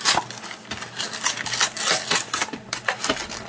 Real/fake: real